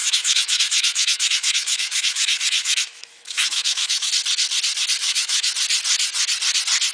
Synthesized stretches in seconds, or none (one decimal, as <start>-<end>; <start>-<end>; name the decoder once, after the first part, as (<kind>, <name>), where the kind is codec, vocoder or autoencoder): 0.0-4.1 (autoencoder, DAC-VAE); 5.0-5.5